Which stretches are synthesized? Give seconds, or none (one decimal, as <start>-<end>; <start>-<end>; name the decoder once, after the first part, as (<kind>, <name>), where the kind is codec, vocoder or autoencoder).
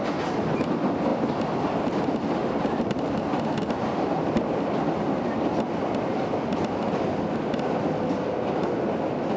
2.4-3.3 (vocoder, BigVGAN v2)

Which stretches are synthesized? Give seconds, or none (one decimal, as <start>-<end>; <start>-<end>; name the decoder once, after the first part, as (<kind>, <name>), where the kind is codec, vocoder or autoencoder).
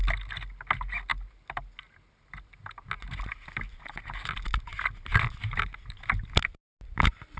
none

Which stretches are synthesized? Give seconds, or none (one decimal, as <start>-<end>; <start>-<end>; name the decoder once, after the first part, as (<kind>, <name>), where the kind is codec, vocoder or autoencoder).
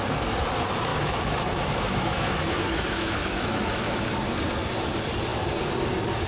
0.9-4.0 (autoencoder, DAC-VAE)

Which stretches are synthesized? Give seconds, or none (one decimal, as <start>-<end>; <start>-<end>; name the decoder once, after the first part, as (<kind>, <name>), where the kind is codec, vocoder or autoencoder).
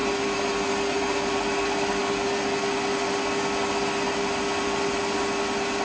none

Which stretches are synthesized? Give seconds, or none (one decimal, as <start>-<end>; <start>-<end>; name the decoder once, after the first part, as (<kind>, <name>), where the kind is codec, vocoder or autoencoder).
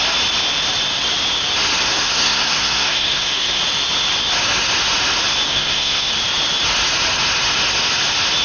1.8-3.6 (codec, SNAC); 5.5-6.1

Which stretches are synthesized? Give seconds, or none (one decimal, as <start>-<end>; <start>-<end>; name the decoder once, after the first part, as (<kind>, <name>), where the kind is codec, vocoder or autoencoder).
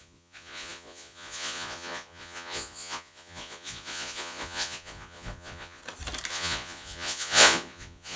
0.0-5.8 (vocoder, Vocos); 6.3-8.2